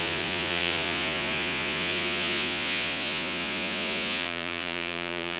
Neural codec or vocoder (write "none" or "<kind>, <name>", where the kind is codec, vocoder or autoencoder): vocoder, Vocos